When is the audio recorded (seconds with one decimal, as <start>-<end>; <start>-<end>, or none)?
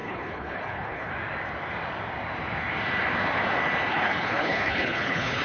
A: 1.1-3.9